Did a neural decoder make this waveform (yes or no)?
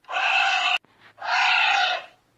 no